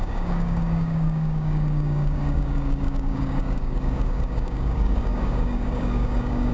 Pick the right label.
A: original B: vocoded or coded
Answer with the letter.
B